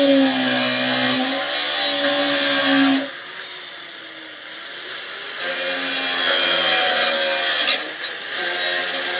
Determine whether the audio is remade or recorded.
recorded